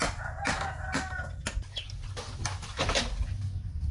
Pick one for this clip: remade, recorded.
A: recorded